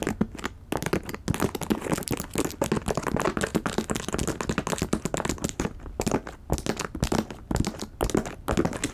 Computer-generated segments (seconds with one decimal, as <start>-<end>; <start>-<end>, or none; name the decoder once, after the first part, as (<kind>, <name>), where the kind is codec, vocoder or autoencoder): none